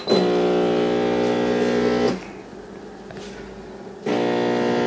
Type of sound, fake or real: real